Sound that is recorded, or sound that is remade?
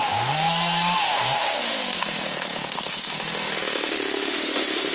remade